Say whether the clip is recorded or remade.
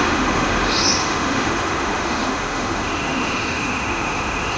remade